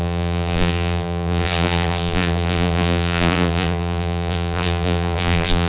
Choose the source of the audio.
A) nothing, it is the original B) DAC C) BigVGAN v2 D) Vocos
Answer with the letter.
C